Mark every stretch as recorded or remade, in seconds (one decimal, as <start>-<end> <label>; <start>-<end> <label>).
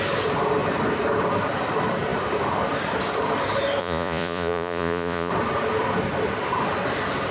0.0-3.8 recorded; 3.8-5.3 remade; 5.3-7.3 recorded